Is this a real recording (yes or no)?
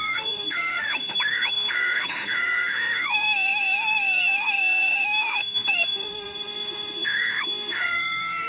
no